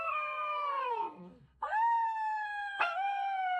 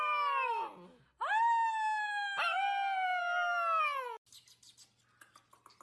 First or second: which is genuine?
second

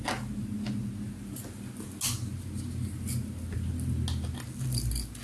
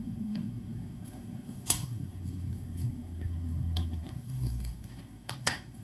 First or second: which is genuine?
first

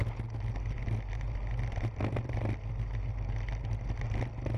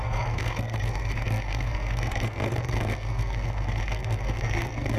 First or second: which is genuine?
first